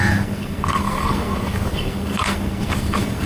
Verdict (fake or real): fake